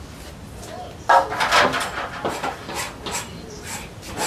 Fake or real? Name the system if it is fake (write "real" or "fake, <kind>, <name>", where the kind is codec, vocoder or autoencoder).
real